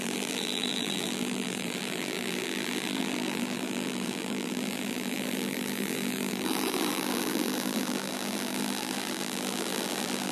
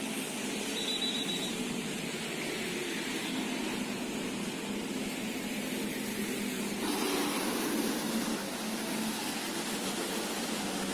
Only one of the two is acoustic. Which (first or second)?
second